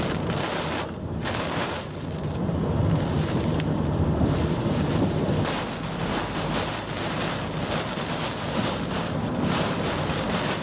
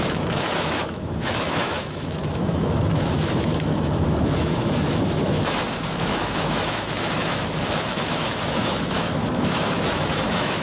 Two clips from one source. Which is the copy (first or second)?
second